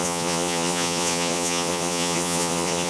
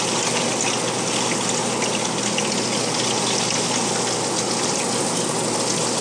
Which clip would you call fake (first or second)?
first